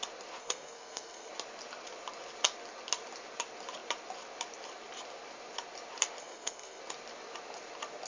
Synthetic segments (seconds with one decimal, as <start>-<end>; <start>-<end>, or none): 0.4-1.3; 6.2-6.8